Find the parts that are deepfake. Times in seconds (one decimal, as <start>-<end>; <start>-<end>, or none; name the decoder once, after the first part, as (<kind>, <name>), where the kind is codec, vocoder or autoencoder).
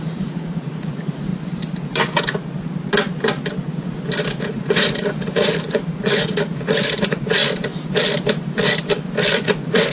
0.0-1.3 (vocoder, Vocos); 4.4-7.4; 9.3-9.9